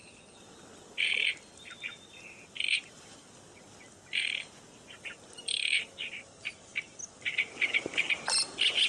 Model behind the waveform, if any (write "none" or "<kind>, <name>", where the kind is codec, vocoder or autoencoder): none